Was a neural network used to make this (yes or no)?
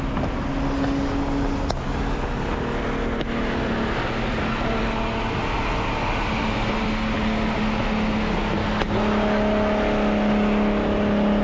no